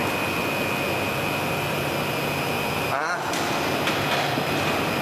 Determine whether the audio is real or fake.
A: real